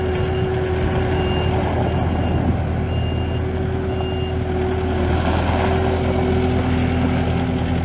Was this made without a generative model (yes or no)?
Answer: yes